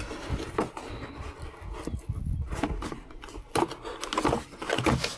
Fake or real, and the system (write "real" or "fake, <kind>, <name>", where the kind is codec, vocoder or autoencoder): real